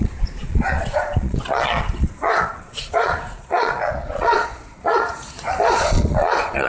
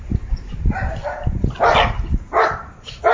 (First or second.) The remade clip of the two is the first